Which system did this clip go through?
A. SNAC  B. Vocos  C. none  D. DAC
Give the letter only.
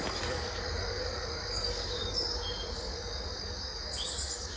D